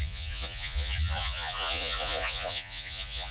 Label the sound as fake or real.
fake